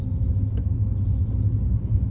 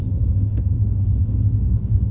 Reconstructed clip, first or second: second